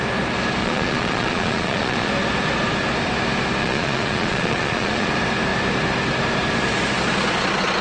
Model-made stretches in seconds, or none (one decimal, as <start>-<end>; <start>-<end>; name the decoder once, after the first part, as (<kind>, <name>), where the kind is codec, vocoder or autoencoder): 0.6-2.1 (vocoder, Vocos); 3.6-5.1